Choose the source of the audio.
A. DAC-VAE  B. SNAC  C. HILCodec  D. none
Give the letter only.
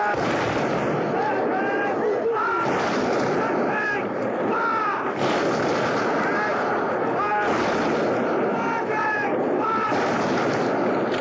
D